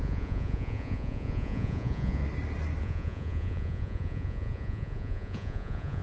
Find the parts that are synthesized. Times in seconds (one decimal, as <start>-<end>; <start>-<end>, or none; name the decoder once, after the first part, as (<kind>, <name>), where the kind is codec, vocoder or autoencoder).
0.0-2.2 (vocoder, Vocos); 2.8-6.0